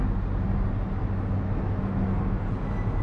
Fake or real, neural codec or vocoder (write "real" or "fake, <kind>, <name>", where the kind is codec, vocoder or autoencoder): real